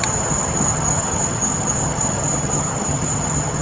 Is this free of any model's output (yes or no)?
no